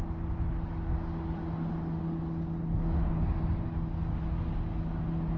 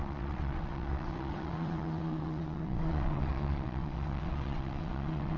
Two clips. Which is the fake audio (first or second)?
second